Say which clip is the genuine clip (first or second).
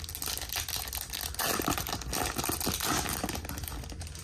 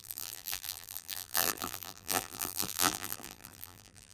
first